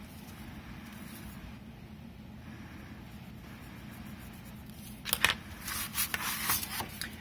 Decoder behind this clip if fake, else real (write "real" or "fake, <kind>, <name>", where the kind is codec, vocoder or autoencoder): real